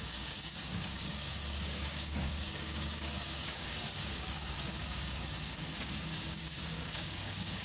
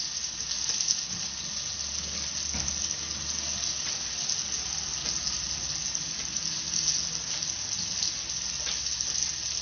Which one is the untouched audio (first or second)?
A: second